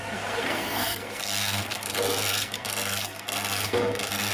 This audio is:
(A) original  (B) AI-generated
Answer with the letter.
B